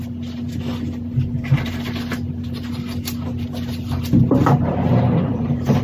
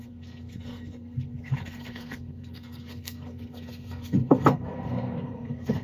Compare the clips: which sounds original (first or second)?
first